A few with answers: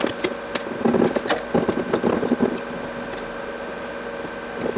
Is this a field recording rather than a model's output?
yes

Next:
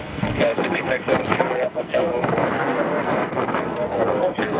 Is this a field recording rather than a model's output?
no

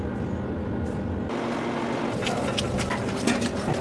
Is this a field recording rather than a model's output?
yes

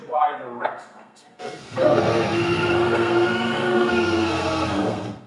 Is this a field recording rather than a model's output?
no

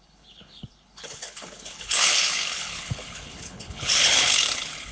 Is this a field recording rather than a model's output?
no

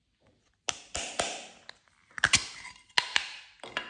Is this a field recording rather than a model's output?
yes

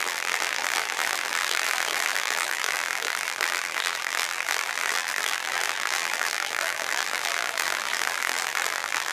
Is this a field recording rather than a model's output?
no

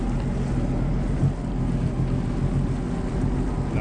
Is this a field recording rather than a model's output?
yes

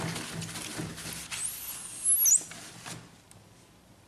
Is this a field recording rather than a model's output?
yes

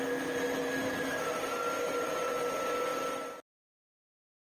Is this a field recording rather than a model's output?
yes